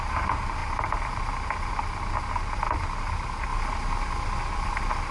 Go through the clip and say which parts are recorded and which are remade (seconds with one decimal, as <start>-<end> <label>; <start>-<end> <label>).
0.0-5.1 recorded